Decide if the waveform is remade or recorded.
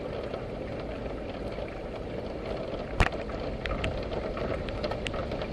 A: recorded